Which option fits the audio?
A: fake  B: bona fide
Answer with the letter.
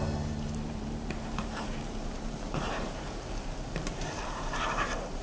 A